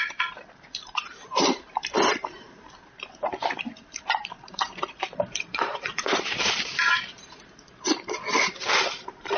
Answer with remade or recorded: remade